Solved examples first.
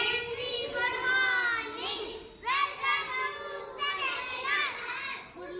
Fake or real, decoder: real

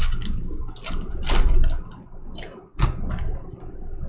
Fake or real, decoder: real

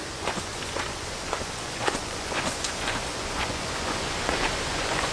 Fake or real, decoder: fake, vocoder, Vocos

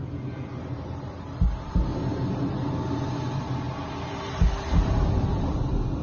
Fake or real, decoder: real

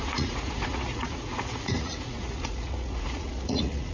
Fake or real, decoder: fake, vocoder, Vocos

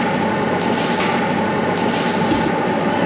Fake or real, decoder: real